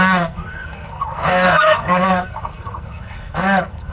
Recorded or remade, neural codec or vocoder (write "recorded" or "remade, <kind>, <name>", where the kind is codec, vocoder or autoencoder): remade, codec, SNAC